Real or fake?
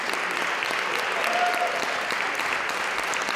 real